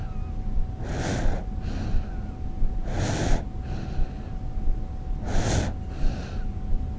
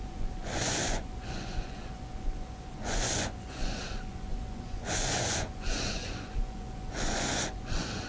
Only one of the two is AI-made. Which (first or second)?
second